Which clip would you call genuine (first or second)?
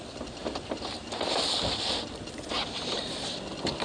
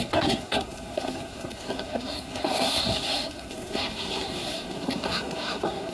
first